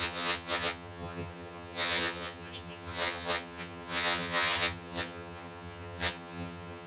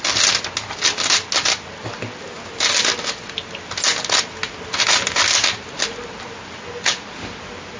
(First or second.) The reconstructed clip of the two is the first